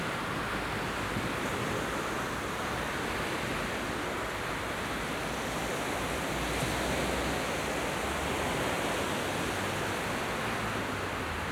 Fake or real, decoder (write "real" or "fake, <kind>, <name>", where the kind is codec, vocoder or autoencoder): real